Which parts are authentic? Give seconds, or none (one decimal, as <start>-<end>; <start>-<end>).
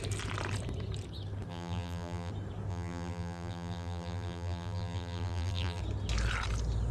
0.0-1.5; 2.3-2.7; 5.8-6.9